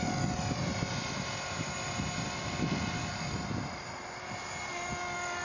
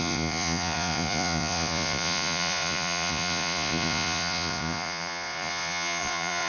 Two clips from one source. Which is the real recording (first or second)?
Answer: first